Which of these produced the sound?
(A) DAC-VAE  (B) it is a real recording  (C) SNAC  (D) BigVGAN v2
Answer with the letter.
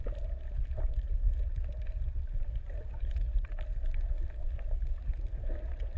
B